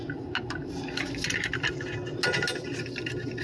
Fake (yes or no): no